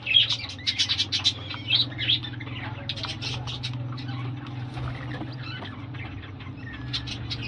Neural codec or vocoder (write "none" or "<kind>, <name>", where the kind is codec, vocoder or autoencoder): none